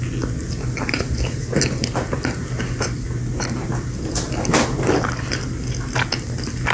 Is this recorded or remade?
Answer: recorded